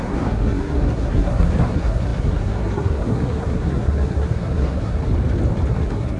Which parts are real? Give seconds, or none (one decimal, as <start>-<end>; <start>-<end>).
5.0-5.7